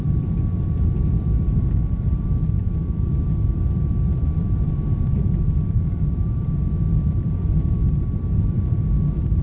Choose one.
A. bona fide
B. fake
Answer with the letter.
B